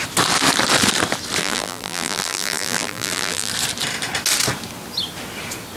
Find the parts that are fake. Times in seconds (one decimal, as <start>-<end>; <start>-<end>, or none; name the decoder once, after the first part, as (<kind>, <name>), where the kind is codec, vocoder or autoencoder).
1.4-3.5 (vocoder, BigVGAN v2)